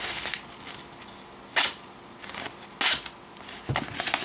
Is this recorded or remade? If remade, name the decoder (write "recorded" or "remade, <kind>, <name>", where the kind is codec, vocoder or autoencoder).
recorded